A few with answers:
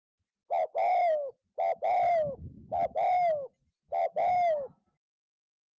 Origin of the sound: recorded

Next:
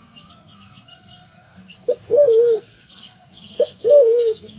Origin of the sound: remade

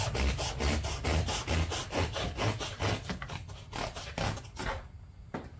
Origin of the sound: recorded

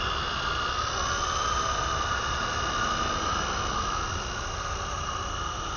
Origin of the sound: recorded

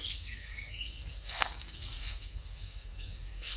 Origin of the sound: remade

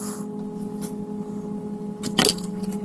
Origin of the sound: recorded